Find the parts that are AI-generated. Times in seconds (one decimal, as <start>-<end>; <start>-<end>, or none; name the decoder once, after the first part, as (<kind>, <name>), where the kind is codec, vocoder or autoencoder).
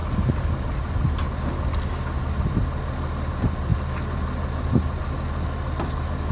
none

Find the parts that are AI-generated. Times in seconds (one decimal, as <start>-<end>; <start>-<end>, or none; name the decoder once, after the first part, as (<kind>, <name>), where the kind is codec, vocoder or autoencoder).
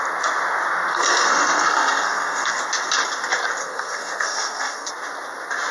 0.9-2.6 (codec, SNAC); 3.6-4.9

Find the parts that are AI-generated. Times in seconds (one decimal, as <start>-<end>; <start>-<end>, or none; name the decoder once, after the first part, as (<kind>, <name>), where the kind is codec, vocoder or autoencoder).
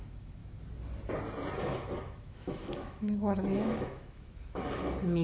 0.0-0.4 (autoencoder, DAC-VAE); 2.0-5.2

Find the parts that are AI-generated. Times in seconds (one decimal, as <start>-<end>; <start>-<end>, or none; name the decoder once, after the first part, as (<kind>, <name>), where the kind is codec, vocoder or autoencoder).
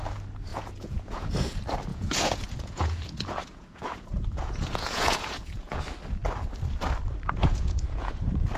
0.5-1.3 (vocoder, Vocos); 1.9-5.8; 7.4-8.1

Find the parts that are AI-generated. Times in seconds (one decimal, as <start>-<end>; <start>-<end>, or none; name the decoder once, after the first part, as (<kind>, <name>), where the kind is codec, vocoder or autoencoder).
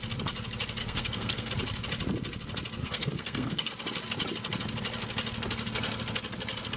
0.8-1.5 (codec, SNAC); 2.8-3.7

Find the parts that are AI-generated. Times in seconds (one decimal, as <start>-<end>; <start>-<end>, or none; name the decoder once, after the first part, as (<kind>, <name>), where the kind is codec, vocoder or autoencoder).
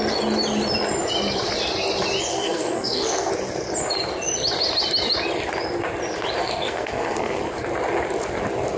2.3-3.3 (codec, SNAC); 6.4-7.4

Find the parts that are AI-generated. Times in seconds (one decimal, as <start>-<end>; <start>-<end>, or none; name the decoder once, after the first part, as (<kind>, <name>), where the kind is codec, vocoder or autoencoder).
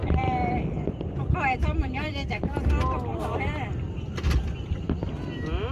0.0-3.4 (vocoder, BigVGAN v2)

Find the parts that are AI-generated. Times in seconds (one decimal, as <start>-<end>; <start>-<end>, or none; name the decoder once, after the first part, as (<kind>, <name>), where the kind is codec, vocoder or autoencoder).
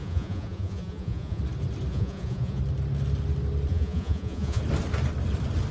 0.0-1.4 (vocoder, Vocos); 1.9-2.6; 3.7-4.6